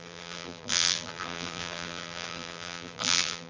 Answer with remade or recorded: remade